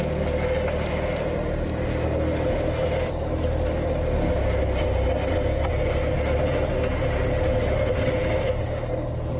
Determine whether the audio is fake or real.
real